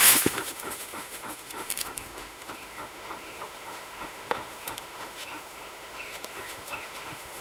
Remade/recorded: remade